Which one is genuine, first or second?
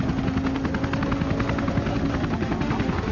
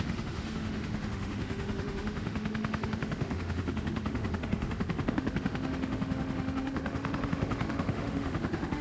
first